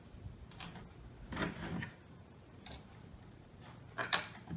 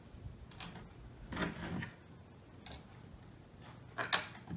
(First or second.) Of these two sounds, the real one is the second